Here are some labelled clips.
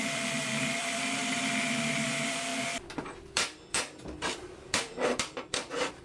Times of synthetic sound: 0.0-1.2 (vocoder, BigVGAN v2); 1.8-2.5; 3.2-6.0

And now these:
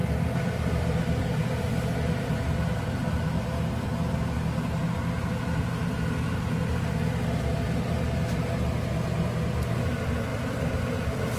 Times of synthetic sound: 0.0-3.3 (vocoder, BigVGAN v2); 10.3-11.4

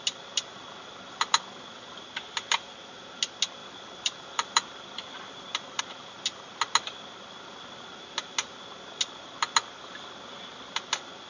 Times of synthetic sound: 3.6-5.8 (vocoder, BigVGAN v2)

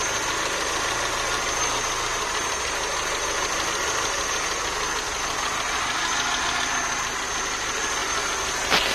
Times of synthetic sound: 2.1-3.3 (vocoder, BigVGAN v2)